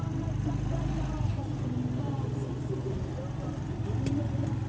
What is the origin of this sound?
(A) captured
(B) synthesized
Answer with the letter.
A